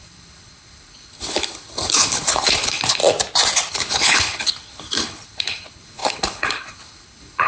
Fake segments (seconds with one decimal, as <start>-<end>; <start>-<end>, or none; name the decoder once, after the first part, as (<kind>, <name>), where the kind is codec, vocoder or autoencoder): 0.0-3.0 (codec, HILCodec); 3.7-7.5

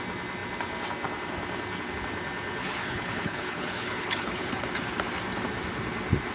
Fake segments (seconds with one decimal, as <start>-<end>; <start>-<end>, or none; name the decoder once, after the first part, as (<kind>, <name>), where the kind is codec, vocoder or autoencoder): 2.6-4.5 (codec, HILCodec)